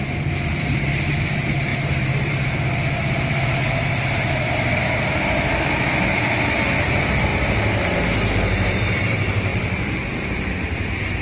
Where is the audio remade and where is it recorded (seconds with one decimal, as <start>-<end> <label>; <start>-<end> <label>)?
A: 0.0-7.3 remade; 7.3-8.3 recorded; 8.3-11.2 remade